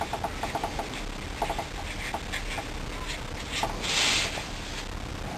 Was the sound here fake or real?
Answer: real